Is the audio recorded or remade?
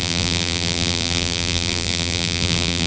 remade